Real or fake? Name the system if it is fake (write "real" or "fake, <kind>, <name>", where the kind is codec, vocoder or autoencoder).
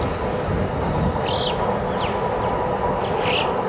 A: real